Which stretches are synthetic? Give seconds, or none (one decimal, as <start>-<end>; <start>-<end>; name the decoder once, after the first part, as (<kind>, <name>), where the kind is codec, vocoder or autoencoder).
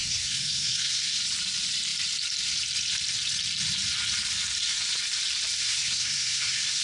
0.0-1.2 (codec, SNAC); 5.6-6.8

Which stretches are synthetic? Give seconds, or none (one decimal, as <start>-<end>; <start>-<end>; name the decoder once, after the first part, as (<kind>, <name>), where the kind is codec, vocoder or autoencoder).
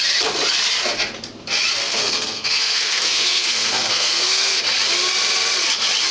1.8-4.6 (codec, SNAC)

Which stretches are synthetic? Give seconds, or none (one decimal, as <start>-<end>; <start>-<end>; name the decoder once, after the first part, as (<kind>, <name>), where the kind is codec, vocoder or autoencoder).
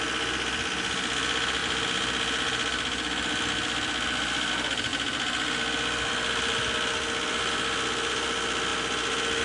none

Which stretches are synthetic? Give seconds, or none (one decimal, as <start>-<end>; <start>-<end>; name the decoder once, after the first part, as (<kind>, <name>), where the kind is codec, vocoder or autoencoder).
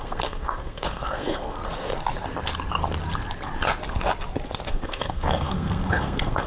0.0-1.6 (codec, SNAC); 4.7-6.5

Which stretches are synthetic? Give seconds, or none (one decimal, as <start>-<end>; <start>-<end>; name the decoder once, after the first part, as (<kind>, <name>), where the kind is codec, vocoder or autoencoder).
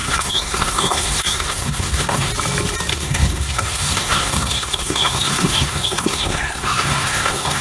0.0-2.3 (codec, SNAC); 2.9-7.6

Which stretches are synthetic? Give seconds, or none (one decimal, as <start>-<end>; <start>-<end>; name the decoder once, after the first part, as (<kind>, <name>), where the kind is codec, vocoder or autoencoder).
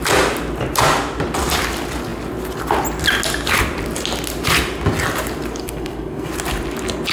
5.6-6.3 (codec, SNAC)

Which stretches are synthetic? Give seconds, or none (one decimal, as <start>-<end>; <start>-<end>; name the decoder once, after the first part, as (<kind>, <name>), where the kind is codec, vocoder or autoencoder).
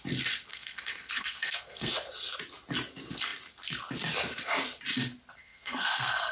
0.5-1.9 (codec, SNAC); 5.4-6.3